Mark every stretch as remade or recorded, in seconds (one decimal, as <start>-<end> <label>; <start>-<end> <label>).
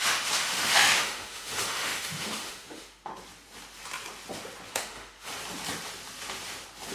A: 0.0-3.1 remade; 3.1-4.7 recorded; 4.7-5.3 remade; 5.3-6.9 recorded